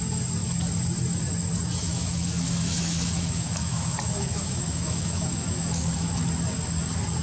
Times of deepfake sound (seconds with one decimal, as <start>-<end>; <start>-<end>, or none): 1.9-6.2